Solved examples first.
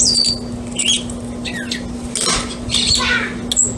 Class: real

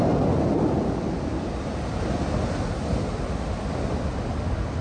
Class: real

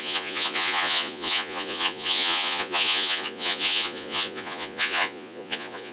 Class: fake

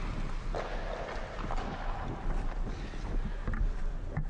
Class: real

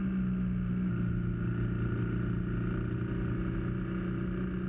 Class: real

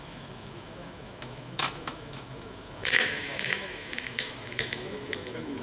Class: fake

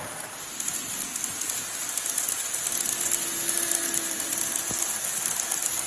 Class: real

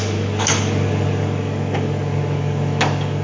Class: fake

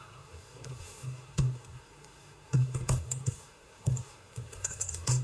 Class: fake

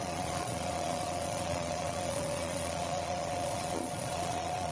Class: fake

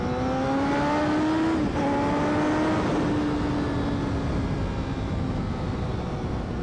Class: real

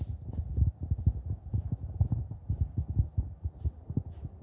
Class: real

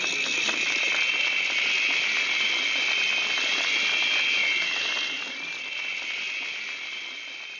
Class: real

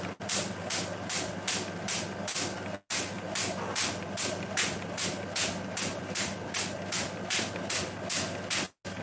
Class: real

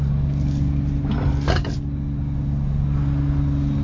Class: real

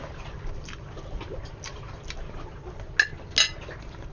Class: real